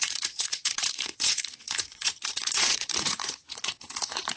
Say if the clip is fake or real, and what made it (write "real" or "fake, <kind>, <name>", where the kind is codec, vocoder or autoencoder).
fake, vocoder, Vocos